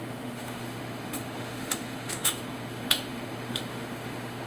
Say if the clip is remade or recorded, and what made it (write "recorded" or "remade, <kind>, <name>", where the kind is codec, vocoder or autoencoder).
remade, autoencoder, DAC-VAE